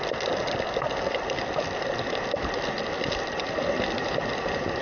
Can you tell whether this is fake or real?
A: real